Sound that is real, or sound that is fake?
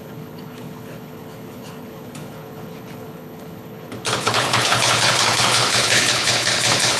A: fake